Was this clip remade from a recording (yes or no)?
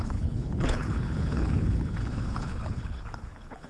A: yes